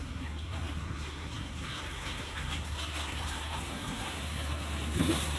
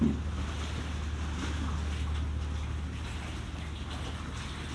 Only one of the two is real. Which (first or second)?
second